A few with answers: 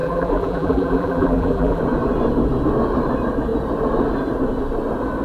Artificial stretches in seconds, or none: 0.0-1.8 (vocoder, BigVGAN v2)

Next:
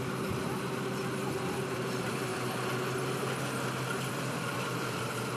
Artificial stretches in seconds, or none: 0.0-2.3 (vocoder, BigVGAN v2); 4.1-5.4

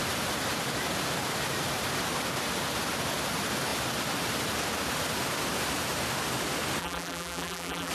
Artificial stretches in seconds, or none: 6.8-7.9 (vocoder, BigVGAN v2)

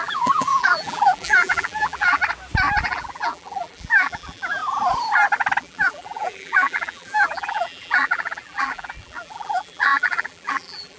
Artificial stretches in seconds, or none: 0.0-2.2 (vocoder, BigVGAN v2); 2.8-4.6; 5.6-11.0

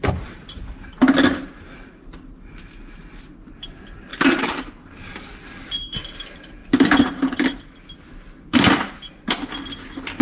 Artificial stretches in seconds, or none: 4.1-5.1 (vocoder, BigVGAN v2)

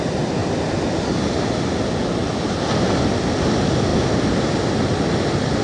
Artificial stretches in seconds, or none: 0.4-1.0 (vocoder, BigVGAN v2); 2.2-3.5; 3.9-4.7

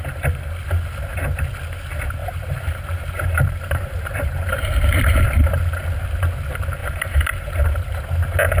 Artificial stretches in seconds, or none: 2.2-5.6 (vocoder, BigVGAN v2); 6.8-8.0